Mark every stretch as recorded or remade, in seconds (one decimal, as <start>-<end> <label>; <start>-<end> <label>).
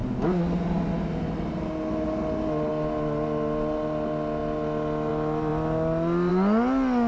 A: 0.0-7.1 recorded